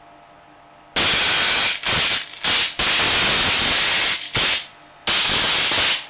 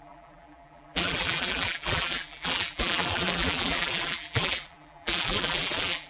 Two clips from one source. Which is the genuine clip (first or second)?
first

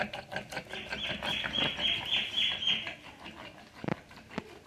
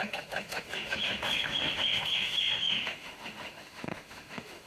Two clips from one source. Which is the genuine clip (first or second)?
first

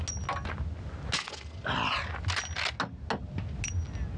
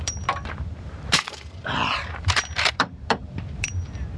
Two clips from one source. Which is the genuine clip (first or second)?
first